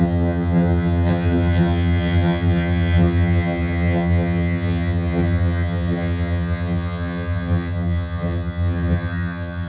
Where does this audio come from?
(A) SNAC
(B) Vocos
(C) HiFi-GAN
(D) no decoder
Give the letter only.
C